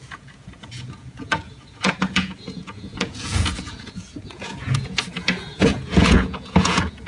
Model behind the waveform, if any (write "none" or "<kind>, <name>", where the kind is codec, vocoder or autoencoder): vocoder, Vocos